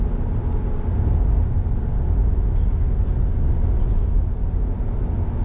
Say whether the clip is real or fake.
real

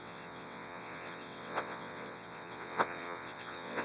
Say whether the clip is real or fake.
fake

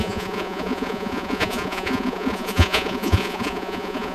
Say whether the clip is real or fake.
fake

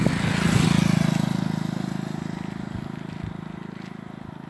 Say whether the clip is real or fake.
real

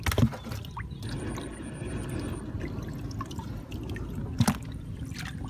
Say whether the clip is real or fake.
real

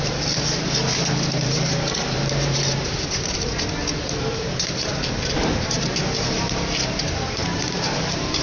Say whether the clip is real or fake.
fake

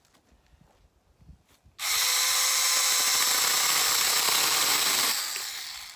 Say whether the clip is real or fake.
real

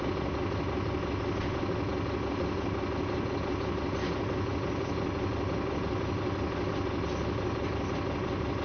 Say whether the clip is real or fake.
real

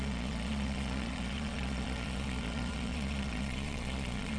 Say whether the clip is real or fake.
fake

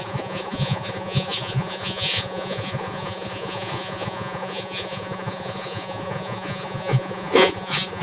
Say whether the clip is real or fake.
fake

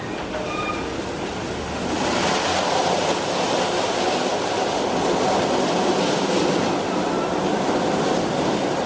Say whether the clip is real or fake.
real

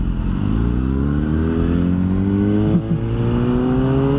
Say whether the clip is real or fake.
real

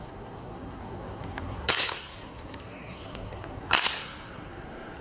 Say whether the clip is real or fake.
fake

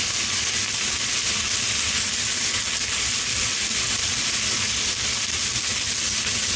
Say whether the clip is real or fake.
real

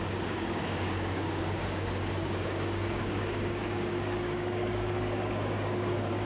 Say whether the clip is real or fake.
fake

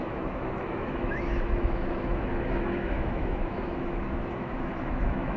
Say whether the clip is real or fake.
fake